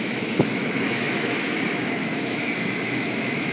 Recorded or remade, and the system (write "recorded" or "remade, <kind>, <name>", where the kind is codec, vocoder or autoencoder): remade, autoencoder, DAC-VAE